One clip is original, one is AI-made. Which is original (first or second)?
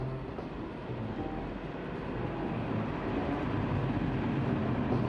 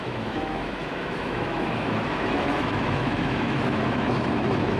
first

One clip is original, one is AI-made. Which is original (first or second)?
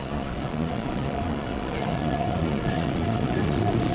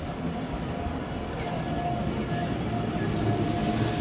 second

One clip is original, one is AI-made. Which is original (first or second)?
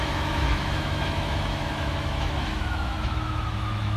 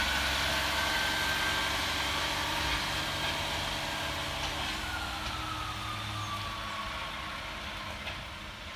second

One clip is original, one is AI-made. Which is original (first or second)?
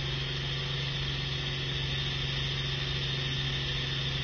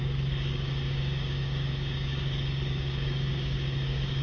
first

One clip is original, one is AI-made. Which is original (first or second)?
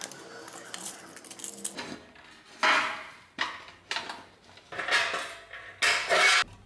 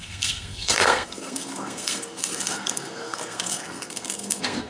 first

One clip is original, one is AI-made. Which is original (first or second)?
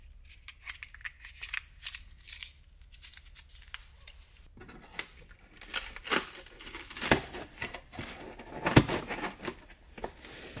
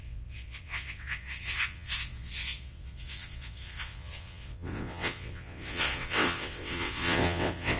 first